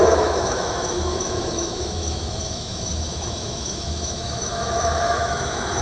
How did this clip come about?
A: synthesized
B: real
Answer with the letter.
A